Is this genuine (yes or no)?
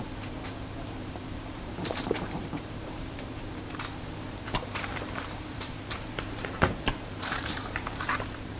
no